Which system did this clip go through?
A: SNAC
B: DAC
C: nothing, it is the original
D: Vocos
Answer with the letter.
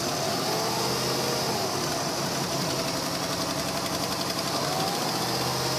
C